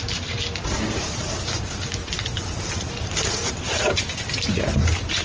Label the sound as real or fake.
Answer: real